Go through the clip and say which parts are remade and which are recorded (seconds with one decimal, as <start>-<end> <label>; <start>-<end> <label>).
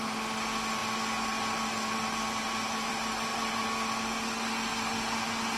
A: 0.0-5.6 recorded